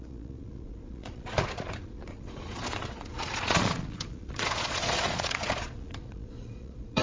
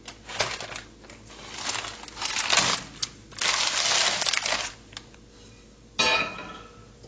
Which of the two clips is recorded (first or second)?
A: second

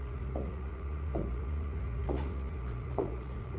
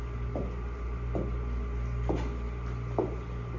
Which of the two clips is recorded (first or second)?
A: second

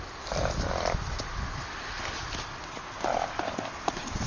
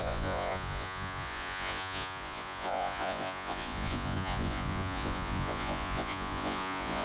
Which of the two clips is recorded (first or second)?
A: first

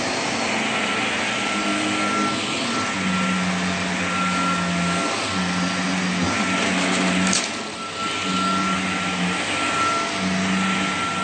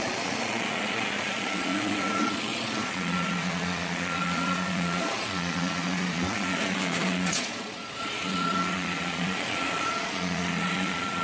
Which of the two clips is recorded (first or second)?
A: first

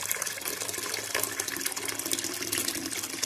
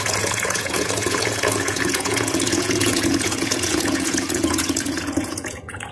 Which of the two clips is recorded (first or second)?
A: first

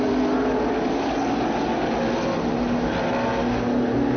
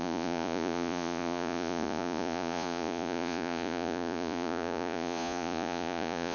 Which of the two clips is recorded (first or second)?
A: first